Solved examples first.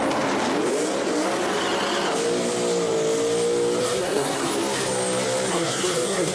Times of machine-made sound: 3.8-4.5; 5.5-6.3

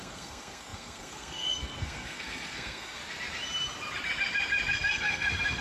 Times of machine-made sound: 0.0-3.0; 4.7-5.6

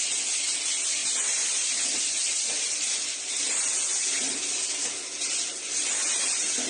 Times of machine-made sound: none

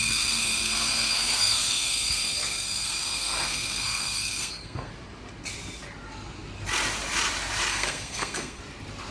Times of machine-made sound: 0.0-4.9; 7.7-8.6